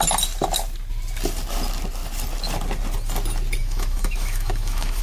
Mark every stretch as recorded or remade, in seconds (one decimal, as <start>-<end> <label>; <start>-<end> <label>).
0.0-3.6 recorded; 3.6-5.0 remade